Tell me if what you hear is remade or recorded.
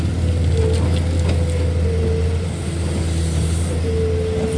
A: recorded